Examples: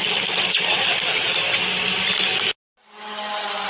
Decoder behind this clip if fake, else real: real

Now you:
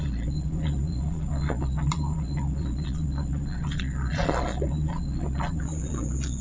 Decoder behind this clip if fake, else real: fake, vocoder, Vocos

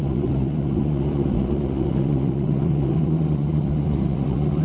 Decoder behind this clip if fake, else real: fake, vocoder, Vocos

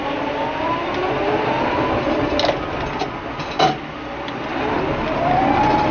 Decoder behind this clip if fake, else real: real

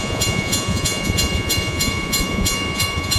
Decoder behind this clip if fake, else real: fake, vocoder, Vocos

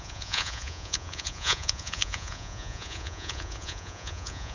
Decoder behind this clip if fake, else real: fake, vocoder, Vocos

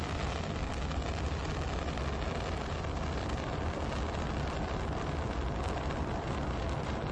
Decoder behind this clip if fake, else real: real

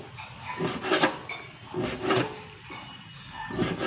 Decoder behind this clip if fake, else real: real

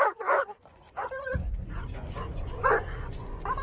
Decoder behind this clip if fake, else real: fake, vocoder, Vocos